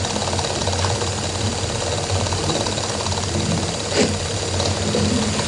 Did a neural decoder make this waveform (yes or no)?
no